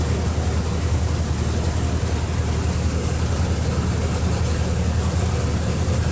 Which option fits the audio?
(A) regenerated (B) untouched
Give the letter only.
B